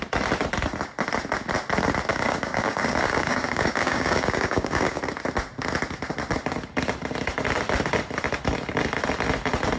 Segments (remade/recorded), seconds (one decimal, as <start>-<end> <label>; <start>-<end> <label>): 0.0-2.1 recorded; 2.1-5.0 remade; 5.0-9.8 recorded